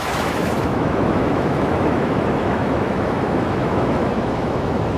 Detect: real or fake fake